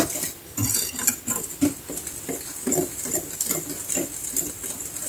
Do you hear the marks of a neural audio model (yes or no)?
no